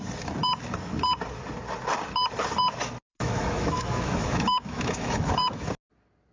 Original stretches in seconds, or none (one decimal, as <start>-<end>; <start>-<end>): 0.0-3.1; 5.7-6.3